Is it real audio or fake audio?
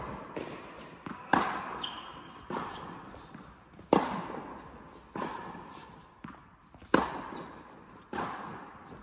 real